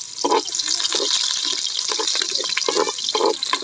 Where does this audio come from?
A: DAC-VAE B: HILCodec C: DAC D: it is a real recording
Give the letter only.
D